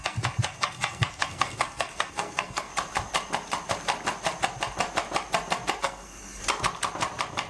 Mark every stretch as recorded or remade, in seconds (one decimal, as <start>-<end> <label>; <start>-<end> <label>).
0.0-2.7 remade; 2.7-5.8 recorded; 5.8-6.4 remade; 6.4-7.5 recorded